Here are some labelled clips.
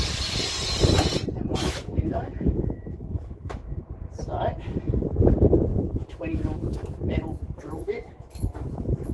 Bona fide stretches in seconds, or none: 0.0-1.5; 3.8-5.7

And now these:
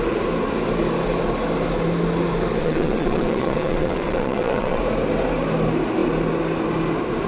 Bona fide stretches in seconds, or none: 0.0-2.6; 4.8-7.3

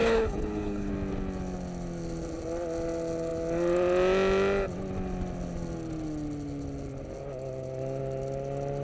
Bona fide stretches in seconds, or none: 0.9-8.8